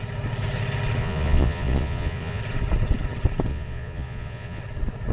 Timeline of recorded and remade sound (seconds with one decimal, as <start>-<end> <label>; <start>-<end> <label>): 0.0-1.0 recorded; 1.0-2.4 remade; 2.4-3.5 recorded; 3.5-4.6 remade; 4.6-5.1 recorded